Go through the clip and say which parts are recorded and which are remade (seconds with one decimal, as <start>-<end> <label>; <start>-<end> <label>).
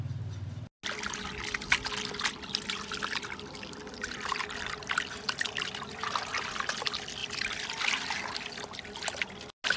0.0-9.8 recorded